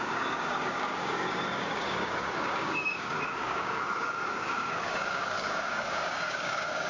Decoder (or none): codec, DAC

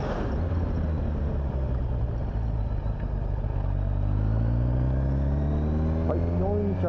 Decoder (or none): none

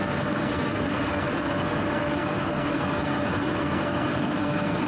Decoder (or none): codec, SNAC